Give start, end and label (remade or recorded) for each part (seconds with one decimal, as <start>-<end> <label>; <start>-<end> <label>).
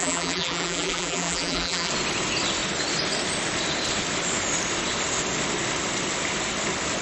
0.0-1.9 remade; 1.9-7.0 recorded